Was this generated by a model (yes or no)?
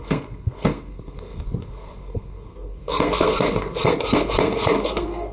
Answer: yes